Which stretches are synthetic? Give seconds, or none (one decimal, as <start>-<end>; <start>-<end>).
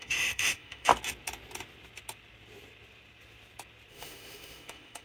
0.0-0.9; 3.9-5.0